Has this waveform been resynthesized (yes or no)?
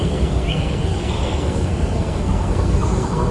yes